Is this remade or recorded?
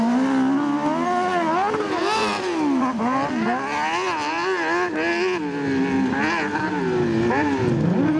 recorded